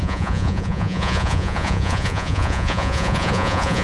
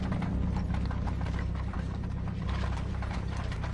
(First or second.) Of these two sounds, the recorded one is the second